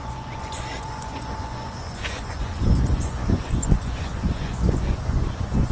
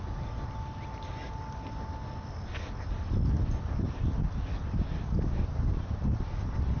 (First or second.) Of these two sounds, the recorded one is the second